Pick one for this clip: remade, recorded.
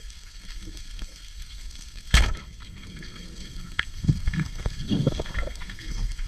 remade